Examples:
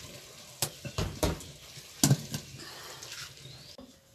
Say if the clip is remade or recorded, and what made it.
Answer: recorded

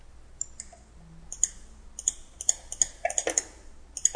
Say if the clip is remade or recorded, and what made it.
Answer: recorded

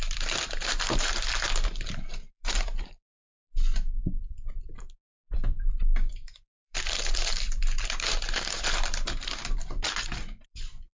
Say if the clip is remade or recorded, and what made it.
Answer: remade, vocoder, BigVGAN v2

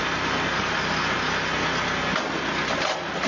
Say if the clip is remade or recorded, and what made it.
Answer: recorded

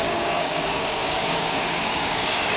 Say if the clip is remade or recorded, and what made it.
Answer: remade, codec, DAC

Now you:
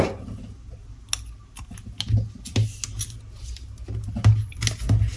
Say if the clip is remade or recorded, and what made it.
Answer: recorded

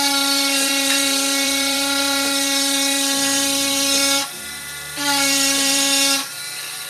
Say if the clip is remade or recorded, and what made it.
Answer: remade, vocoder, BigVGAN v2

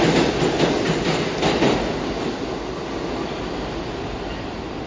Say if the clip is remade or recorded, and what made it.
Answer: recorded